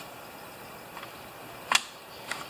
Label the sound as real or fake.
real